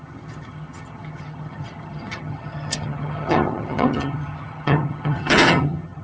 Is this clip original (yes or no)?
no